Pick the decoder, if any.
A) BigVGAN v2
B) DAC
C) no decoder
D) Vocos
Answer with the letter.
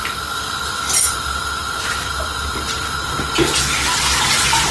C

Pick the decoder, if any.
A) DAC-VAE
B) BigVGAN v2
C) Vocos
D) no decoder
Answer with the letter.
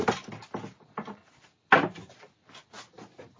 D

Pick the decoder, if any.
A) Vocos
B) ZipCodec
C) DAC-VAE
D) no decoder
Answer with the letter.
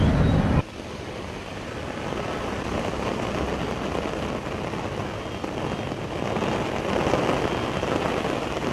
D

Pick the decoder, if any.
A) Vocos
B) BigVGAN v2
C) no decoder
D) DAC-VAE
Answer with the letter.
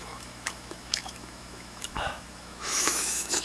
D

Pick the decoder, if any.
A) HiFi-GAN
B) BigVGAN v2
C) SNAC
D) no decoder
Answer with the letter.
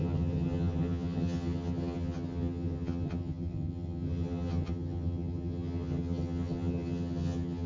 A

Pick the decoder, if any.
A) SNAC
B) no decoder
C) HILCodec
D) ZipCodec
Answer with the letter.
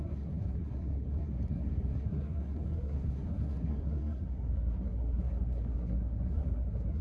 A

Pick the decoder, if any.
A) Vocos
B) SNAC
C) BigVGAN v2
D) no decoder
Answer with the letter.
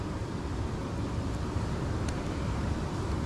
D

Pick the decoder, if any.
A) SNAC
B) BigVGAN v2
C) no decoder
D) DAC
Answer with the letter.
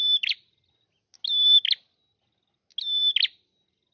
C